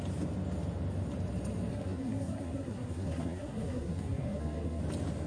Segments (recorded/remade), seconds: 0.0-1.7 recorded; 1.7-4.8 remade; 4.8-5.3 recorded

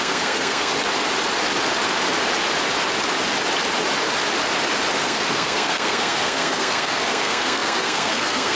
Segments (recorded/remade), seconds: 0.0-0.7 remade; 0.7-5.0 recorded; 5.0-8.6 remade

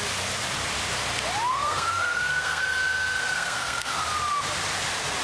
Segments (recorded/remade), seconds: 0.0-1.5 recorded; 1.5-4.0 remade; 4.0-5.2 recorded